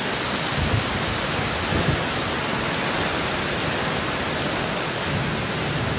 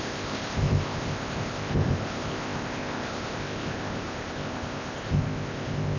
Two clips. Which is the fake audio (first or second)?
second